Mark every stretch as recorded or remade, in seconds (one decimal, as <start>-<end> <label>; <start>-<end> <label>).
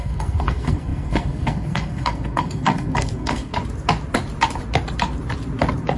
0.0-3.5 remade; 3.5-6.0 recorded